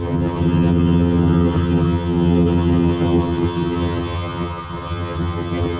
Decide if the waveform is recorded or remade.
remade